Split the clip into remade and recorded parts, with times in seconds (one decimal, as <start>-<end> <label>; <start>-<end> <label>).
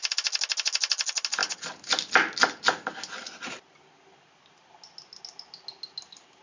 0.0-6.4 recorded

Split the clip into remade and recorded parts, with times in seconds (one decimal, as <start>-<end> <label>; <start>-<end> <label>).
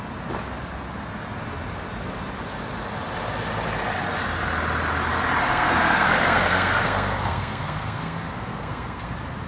0.0-5.4 recorded; 5.4-9.1 remade; 9.1-9.5 recorded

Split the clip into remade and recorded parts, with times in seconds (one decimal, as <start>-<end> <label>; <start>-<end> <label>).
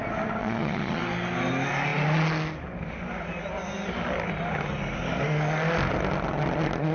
0.0-0.4 recorded; 0.4-1.0 remade; 1.0-6.9 recorded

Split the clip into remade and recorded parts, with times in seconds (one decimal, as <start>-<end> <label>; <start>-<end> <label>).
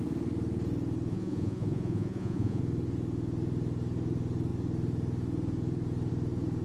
0.0-1.1 recorded; 1.1-2.6 remade; 2.6-6.6 recorded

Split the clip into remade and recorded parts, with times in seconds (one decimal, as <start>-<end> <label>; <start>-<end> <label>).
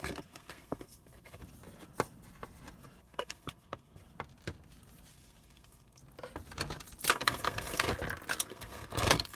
0.0-1.4 remade; 1.4-3.0 recorded; 3.0-4.0 remade; 4.0-5.1 recorded; 5.1-6.0 remade; 6.0-7.1 recorded; 7.1-7.9 remade; 7.9-8.4 recorded; 8.4-9.3 remade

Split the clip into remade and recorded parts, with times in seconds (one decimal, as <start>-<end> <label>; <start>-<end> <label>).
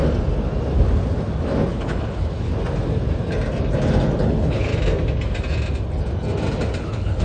0.0-1.7 recorded; 1.7-2.5 remade; 2.5-4.2 recorded; 4.2-4.7 remade; 4.7-6.8 recorded; 6.8-7.2 remade